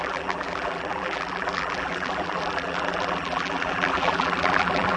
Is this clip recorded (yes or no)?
no